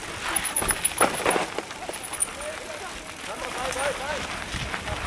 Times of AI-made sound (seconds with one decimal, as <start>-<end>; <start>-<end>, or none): none